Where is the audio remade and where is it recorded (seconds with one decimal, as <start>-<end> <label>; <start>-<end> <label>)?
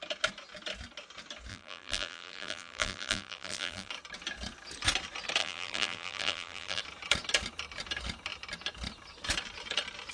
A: 0.0-1.5 recorded; 1.5-3.9 remade; 3.9-5.4 recorded; 5.4-6.8 remade; 6.8-10.1 recorded